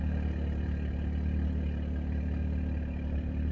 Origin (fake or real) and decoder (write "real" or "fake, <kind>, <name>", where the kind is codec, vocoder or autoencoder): real